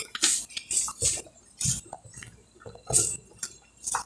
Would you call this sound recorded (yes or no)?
yes